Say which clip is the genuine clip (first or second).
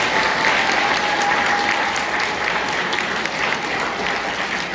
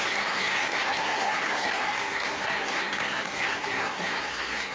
first